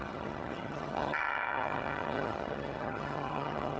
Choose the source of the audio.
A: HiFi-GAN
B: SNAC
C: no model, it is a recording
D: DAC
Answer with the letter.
A